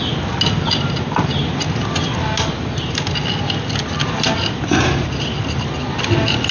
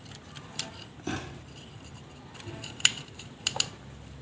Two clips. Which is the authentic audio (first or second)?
first